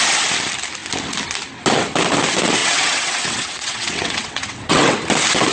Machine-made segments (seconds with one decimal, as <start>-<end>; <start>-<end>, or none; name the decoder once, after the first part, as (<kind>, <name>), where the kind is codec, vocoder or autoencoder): 2.6-5.0 (vocoder, WaveNeXt)